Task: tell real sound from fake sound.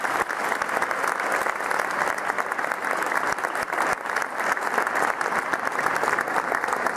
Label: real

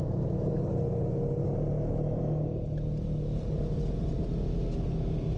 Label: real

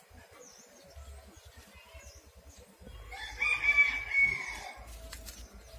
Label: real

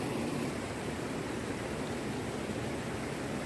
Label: real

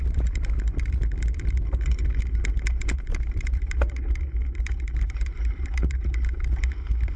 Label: fake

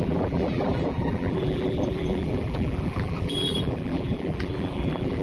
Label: fake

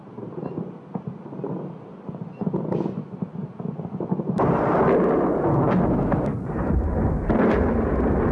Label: real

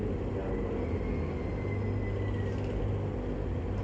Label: real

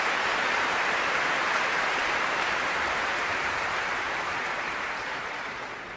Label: fake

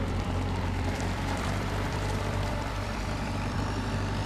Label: fake